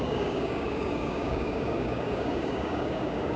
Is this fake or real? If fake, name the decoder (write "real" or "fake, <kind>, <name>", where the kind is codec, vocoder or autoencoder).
fake, codec, DAC